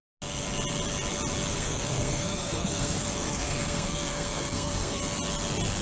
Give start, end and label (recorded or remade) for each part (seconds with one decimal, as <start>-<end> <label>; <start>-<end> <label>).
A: 0.0-1.5 recorded; 1.5-5.0 remade; 5.0-5.8 recorded